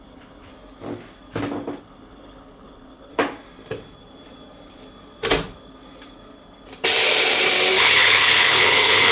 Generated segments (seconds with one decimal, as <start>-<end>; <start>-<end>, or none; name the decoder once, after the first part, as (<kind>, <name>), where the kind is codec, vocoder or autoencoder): 0.0-0.5 (codec, HILCodec); 1.8-3.1; 7.7-9.1